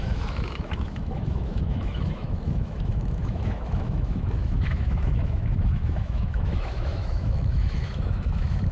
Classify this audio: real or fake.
fake